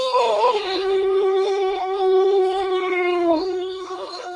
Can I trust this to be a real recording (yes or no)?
no